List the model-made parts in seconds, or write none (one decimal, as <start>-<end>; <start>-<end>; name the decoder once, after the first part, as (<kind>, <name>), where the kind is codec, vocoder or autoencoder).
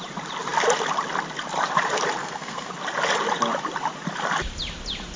2.2-2.7 (codec, SNAC)